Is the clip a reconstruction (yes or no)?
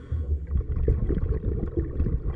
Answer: no